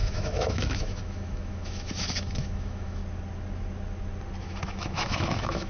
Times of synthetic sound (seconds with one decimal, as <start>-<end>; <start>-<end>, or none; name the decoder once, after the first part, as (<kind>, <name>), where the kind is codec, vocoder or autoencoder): 0.0-3.0 (autoencoder, DAC-VAE); 4.4-5.7